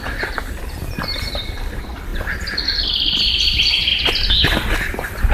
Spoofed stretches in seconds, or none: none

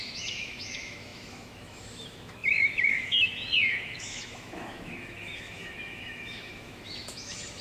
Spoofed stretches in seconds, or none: 0.0-7.6 (autoencoder, DAC-VAE)

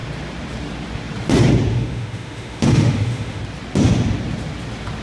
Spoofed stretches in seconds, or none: 1.7-3.4 (autoencoder, DAC-VAE)

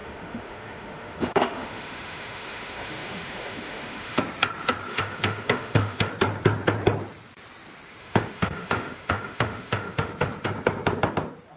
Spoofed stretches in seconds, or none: 0.0-4.2 (autoencoder, DAC-VAE); 4.9-6.1; 8.0-10.1